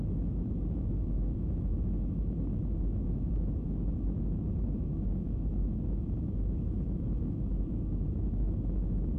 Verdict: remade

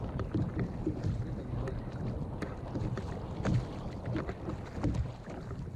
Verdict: recorded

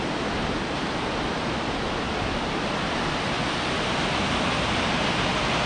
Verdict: recorded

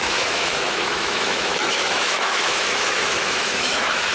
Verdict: remade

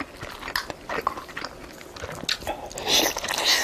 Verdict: recorded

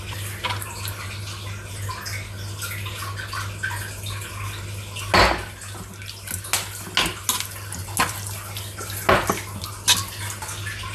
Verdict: recorded